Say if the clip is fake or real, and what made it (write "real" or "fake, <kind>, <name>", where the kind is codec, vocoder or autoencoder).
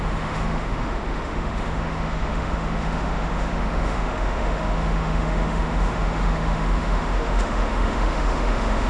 fake, autoencoder, DAC-VAE